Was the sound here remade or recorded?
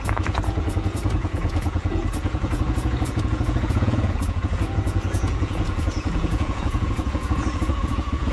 remade